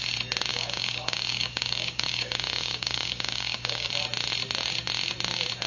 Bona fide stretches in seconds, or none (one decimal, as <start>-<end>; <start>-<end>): 0.0-0.5; 3.9-5.7